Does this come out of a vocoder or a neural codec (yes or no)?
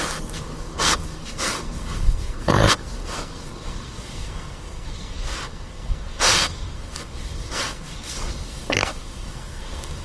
yes